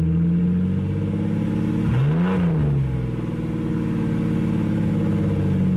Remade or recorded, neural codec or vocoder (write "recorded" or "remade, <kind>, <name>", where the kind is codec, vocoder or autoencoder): recorded